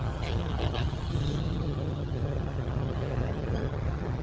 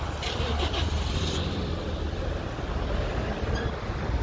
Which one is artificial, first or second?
first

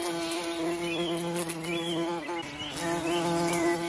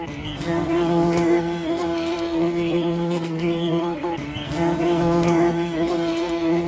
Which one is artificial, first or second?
second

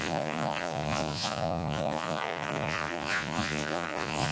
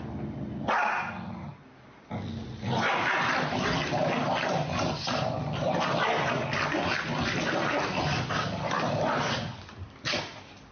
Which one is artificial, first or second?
first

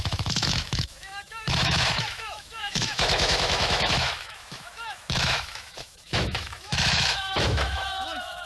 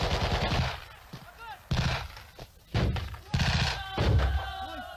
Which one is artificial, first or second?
first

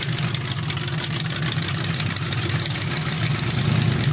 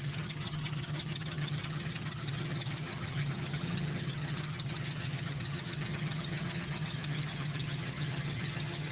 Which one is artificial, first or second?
second